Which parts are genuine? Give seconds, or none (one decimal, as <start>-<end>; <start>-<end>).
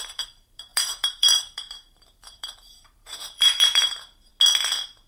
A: 4.3-5.1